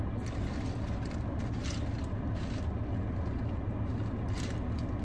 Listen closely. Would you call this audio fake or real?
real